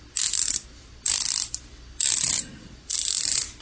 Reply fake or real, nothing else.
real